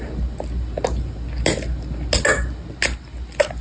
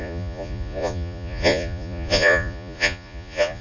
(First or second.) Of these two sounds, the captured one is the first